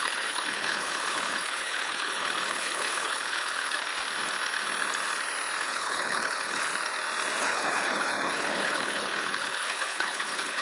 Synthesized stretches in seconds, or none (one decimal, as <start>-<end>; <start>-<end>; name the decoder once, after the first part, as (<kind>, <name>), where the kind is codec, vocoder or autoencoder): 0.0-3.9 (codec, HILCodec); 5.6-6.7; 7.4-10.6